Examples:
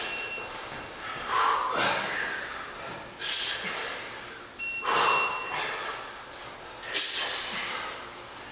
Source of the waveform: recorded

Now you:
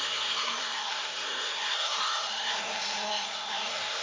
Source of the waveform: remade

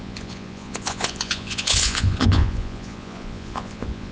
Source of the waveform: remade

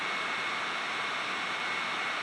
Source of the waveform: recorded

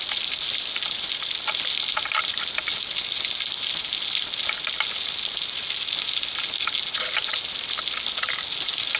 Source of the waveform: recorded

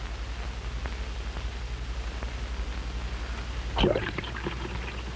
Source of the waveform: recorded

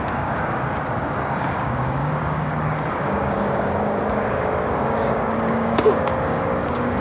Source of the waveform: remade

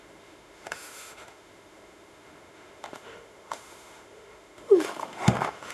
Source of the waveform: remade